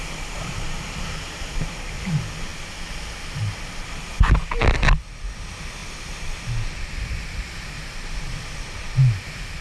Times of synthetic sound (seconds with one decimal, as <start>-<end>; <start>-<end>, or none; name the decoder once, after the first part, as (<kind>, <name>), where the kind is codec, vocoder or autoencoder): none